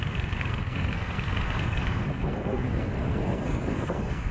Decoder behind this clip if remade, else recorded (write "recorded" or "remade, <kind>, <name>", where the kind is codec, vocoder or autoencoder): remade, codec, SNAC